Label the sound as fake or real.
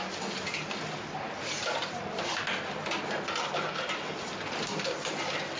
real